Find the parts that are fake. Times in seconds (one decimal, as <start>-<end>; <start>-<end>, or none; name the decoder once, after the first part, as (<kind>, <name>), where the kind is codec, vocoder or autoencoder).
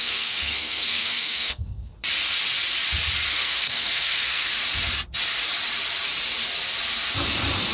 0.0-1.9 (codec, SNAC); 3.3-4.5